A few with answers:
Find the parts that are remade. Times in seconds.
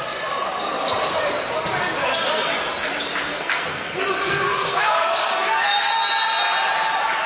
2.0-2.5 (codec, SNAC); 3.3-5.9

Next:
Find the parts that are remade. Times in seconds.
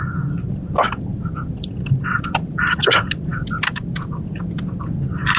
none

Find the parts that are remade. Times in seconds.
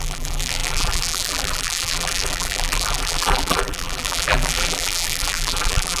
0.0-6.0 (vocoder, BigVGAN v2)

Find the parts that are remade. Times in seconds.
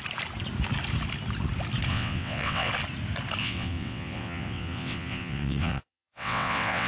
1.9-2.7 (vocoder, WaveNeXt); 3.4-6.9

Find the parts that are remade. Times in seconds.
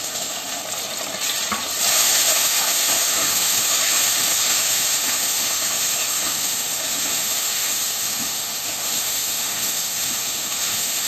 0.0-0.6 (autoencoder, DAC-VAE); 1.9-11.1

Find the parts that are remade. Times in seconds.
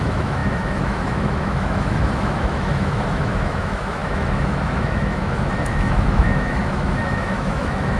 0.0-8.0 (autoencoder, DAC-VAE)